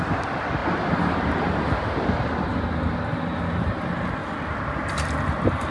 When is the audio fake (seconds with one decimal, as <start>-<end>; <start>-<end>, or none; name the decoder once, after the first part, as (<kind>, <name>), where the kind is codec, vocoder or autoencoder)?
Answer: 0.6-1.7 (vocoder, BigVGAN v2)